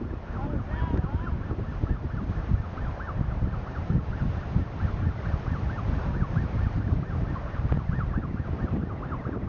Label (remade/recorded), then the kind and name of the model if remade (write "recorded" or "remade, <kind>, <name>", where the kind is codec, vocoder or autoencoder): recorded